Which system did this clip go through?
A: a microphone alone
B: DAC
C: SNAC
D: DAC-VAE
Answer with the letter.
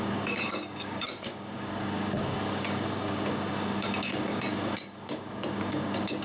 B